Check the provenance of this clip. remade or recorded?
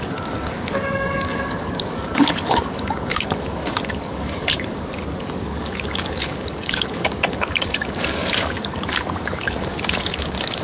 remade